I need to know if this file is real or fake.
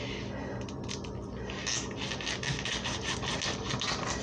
real